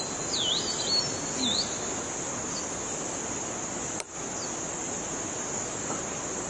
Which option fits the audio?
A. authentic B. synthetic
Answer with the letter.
A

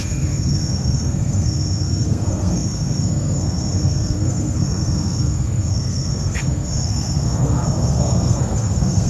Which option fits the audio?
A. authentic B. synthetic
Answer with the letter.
B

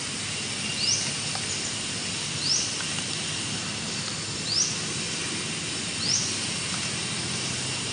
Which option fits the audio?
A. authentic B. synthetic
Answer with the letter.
A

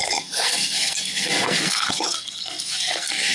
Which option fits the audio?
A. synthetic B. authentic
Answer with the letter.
A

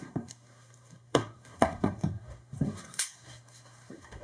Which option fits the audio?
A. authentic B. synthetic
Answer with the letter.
B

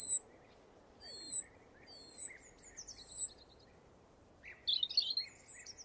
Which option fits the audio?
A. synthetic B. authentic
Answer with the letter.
B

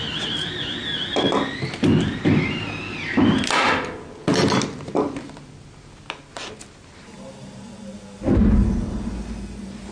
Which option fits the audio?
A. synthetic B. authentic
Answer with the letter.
B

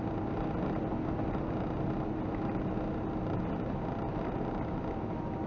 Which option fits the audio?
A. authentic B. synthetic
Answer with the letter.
A